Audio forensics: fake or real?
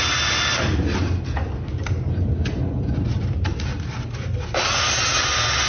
real